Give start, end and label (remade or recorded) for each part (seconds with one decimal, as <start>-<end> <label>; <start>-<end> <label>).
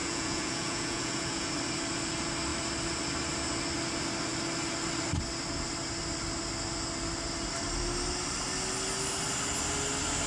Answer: 0.0-1.5 remade; 1.5-10.3 recorded